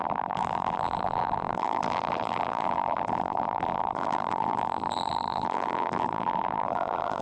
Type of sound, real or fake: fake